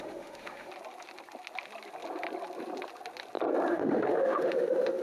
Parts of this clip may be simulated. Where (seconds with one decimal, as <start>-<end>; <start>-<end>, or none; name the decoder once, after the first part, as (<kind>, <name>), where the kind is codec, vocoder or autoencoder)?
0.0-0.7 (autoencoder, DAC-VAE); 3.7-5.0